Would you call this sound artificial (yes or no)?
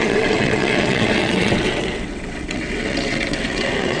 yes